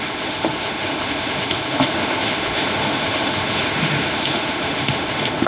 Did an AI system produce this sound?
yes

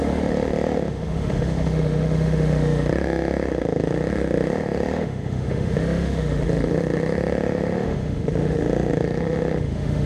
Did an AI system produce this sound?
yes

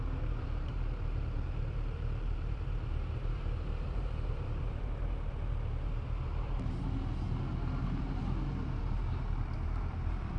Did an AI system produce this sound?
yes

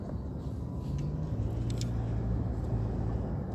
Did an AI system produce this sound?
no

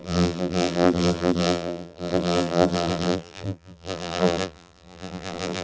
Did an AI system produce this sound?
yes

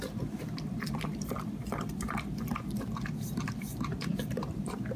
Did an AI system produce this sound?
yes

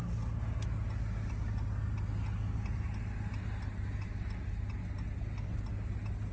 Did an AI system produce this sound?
no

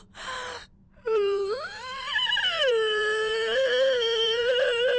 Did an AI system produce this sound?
yes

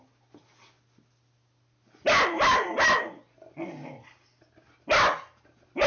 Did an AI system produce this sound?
no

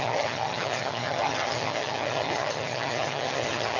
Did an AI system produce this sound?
yes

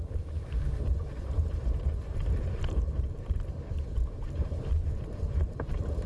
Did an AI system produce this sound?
yes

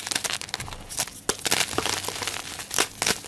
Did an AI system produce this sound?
no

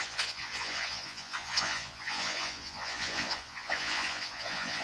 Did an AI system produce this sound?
yes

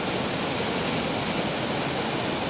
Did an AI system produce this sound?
no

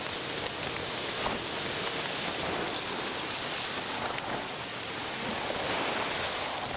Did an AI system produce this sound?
yes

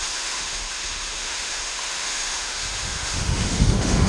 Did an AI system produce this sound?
yes